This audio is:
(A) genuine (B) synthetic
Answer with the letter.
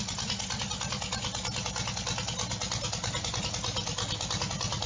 A